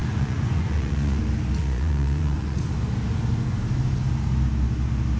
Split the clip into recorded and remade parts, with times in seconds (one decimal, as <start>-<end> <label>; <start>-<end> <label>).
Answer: 0.0-1.2 remade; 1.2-1.6 recorded; 1.6-2.7 remade; 2.7-5.2 recorded